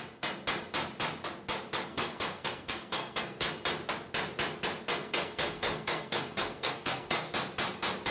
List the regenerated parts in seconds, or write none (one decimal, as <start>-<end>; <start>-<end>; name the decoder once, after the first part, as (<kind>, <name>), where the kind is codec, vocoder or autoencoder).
1.9-3.5 (codec, SNAC); 4.9-7.3